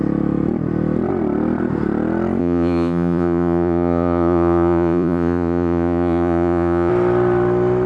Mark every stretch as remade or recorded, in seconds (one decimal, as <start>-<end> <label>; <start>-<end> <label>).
0.0-2.4 recorded; 2.4-6.9 remade; 6.9-7.9 recorded